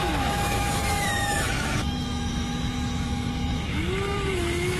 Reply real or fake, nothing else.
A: fake